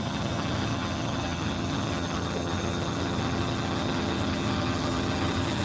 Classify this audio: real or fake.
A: fake